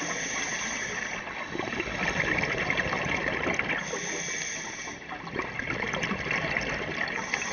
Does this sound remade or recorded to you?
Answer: recorded